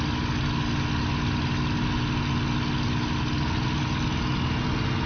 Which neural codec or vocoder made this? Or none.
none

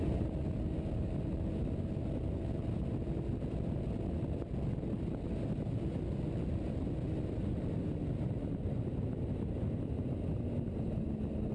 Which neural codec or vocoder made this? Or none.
none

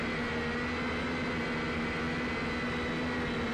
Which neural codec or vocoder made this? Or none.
none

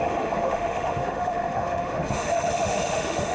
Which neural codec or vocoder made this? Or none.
autoencoder, DAC-VAE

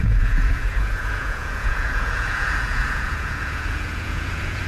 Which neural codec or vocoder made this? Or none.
vocoder, Vocos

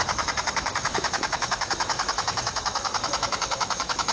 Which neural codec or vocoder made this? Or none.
autoencoder, DAC-VAE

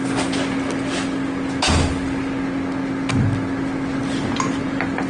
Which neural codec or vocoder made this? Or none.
none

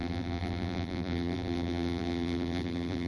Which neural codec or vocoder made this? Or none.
vocoder, BigVGAN v2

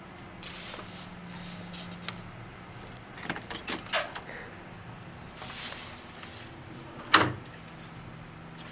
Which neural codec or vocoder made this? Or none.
none